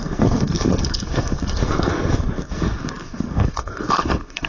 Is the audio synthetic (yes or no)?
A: yes